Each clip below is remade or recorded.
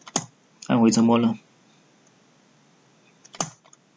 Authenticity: recorded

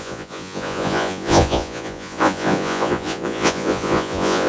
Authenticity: remade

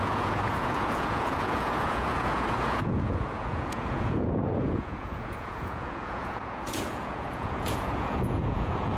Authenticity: remade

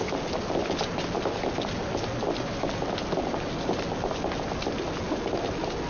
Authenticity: recorded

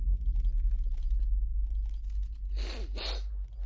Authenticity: recorded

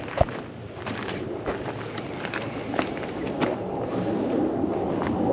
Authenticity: recorded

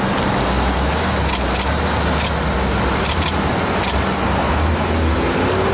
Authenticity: recorded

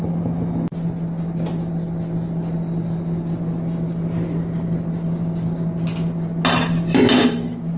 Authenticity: recorded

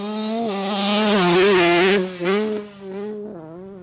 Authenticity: recorded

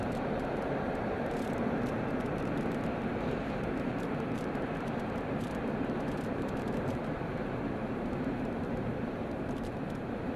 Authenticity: remade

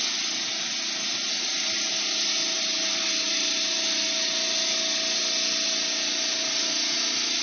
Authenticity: recorded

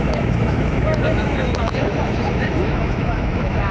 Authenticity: remade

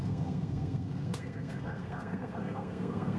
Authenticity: remade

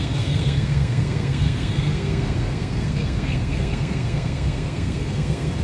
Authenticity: remade